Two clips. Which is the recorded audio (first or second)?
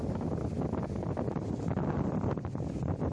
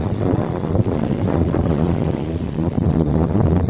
first